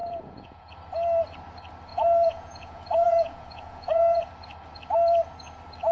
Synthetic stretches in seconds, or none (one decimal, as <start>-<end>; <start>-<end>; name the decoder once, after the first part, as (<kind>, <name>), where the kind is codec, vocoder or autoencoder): 0.0-0.7 (vocoder, Vocos); 1.9-4.3